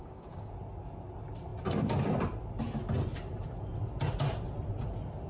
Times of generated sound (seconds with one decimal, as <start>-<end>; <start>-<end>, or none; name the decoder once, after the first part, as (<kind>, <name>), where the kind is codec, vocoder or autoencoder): 0.0-0.5 (codec, DAC)